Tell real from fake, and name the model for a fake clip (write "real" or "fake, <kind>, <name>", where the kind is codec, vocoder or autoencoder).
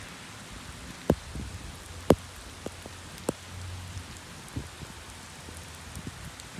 real